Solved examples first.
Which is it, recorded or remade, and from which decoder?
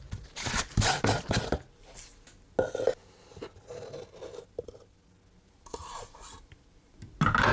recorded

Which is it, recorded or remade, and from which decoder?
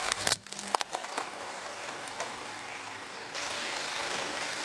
remade, codec, DAC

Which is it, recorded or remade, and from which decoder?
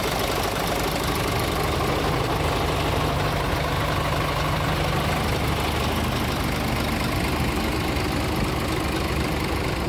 recorded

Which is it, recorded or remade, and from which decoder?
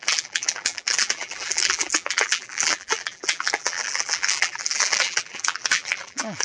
remade, vocoder, BigVGAN v2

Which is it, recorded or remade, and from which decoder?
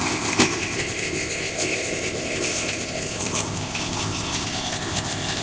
remade, codec, ZipCodec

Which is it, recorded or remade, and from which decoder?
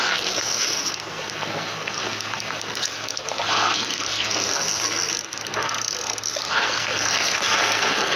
remade, codec, SNAC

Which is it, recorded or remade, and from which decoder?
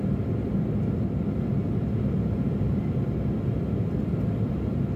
recorded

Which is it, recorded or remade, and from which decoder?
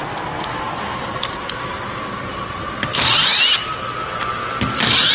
recorded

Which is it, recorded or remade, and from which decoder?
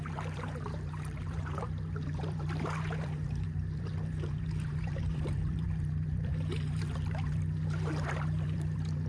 remade, vocoder, BigVGAN v2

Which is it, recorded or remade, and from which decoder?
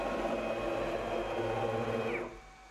recorded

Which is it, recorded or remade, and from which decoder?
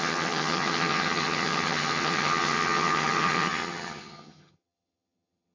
remade, vocoder, HiFi-GAN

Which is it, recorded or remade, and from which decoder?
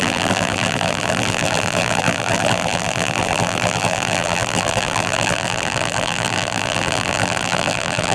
remade, vocoder, BigVGAN v2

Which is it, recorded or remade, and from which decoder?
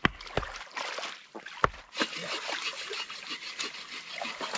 recorded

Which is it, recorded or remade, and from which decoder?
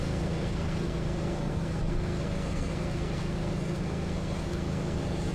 remade, codec, SNAC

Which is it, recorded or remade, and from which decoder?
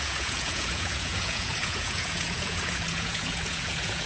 remade, vocoder, Vocos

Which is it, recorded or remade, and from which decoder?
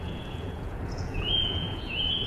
remade, vocoder, Vocos